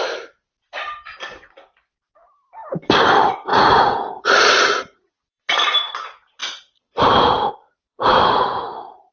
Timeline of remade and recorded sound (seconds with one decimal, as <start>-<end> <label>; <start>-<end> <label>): 0.0-3.5 recorded; 3.5-5.5 remade; 5.5-6.4 recorded; 6.4-9.1 remade